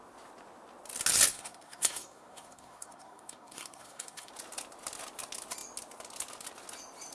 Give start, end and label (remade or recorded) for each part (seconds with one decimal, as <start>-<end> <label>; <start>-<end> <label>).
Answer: 0.0-1.3 recorded; 1.3-4.3 remade; 4.3-7.1 recorded